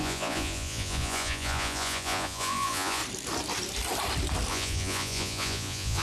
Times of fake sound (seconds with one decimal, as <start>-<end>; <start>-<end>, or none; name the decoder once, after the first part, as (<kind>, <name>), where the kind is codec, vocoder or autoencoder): 0.0-3.0 (vocoder, Vocos); 4.5-6.0